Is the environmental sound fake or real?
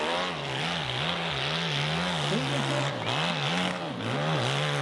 real